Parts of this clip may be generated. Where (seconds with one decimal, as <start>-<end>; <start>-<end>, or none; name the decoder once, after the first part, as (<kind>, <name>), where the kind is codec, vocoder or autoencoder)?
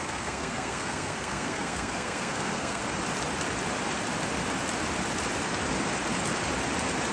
0.0-2.8 (codec, SNAC)